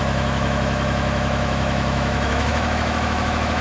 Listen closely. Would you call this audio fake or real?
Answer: fake